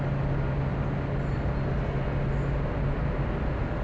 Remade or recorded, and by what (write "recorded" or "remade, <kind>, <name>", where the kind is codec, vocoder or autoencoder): recorded